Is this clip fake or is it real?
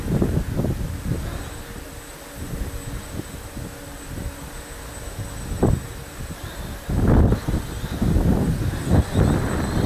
real